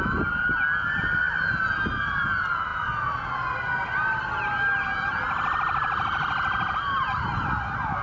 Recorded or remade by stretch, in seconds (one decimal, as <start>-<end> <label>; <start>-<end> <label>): 0.0-8.0 recorded